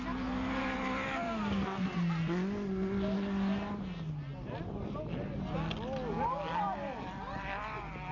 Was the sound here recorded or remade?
recorded